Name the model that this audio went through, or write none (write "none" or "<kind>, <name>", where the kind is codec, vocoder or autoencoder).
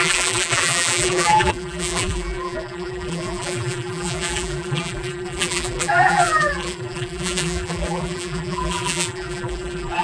vocoder, BigVGAN v2